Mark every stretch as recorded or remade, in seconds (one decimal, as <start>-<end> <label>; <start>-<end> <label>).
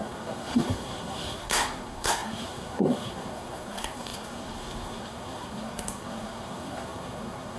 0.0-7.6 remade